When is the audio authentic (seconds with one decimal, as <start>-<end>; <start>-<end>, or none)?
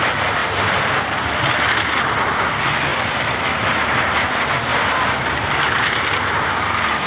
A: 0.0-2.9; 4.0-4.7; 5.3-7.1